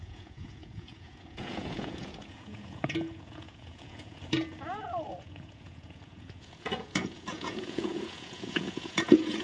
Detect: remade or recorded remade